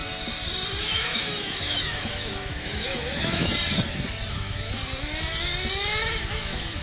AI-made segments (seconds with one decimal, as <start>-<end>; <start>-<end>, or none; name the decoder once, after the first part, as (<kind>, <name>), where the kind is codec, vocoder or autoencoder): 0.8-3.5 (autoencoder, DAC-VAE); 4.3-4.8; 6.2-6.8

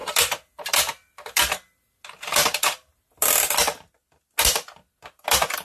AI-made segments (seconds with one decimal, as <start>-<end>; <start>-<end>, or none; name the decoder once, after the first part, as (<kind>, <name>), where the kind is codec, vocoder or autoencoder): none

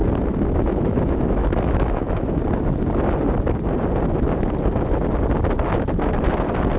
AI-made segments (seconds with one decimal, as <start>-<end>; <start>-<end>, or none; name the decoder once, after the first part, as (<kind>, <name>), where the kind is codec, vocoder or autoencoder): 0.6-2.4 (autoencoder, DAC-VAE)

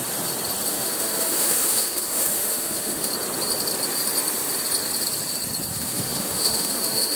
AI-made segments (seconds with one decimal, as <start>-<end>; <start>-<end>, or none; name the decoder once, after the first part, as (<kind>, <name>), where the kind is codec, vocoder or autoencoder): 0.7-3.1 (autoencoder, DAC-VAE); 5.7-7.2

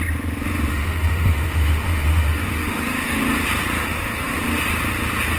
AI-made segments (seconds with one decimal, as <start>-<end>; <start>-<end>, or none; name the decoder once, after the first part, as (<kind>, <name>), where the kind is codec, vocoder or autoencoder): 0.7-3.2 (autoencoder, DAC-VAE); 3.7-4.4